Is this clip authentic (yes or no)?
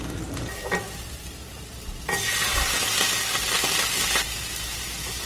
yes